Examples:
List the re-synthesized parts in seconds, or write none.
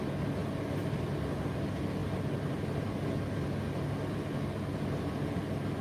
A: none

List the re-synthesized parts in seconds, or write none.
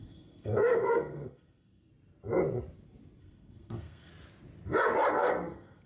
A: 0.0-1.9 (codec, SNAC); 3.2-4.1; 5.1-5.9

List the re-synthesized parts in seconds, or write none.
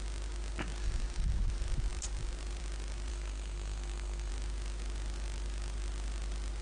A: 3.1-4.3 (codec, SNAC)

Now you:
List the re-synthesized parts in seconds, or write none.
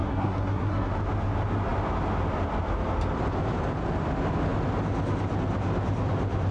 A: 0.0-0.9 (codec, SNAC)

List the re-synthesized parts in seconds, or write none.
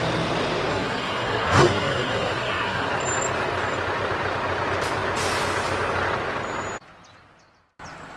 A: 0.7-2.9 (codec, SNAC)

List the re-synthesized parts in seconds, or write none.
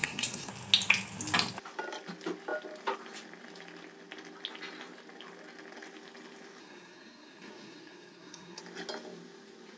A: 0.0-0.5 (codec, SNAC); 6.6-8.6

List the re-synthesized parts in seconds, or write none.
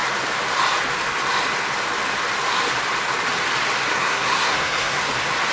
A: 3.9-5.0 (codec, SNAC)